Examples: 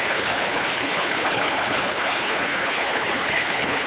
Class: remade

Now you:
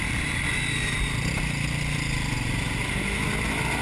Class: recorded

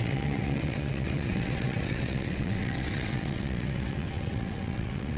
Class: remade